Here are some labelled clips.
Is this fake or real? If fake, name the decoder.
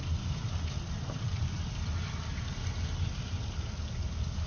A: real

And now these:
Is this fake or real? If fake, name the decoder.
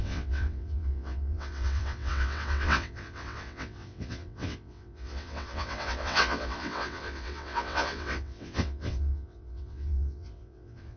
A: fake, vocoder, WaveNeXt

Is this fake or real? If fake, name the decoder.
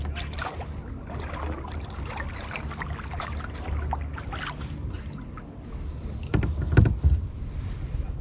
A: real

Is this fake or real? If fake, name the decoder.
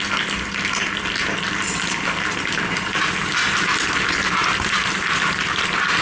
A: real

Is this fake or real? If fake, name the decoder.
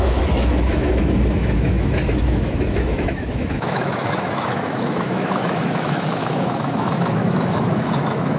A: fake, autoencoder, DAC-VAE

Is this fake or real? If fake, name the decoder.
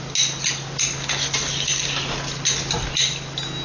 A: real